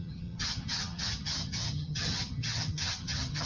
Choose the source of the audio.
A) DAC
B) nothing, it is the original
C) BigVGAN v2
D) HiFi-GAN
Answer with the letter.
D